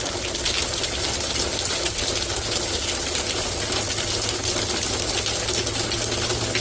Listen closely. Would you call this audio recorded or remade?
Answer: recorded